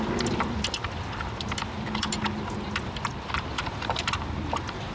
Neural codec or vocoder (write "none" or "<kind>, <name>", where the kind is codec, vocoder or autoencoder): none